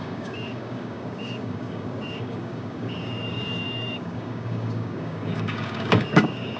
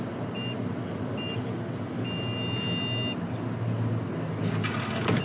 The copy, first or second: first